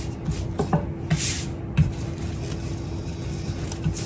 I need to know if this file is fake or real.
real